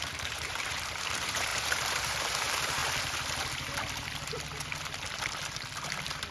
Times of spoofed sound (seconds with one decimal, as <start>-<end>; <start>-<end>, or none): 0.0-2.8

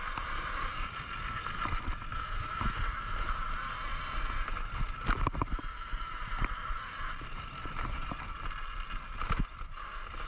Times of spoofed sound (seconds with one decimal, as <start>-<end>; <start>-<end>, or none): none

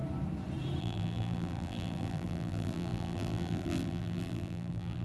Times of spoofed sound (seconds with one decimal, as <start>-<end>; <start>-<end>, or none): 0.8-5.0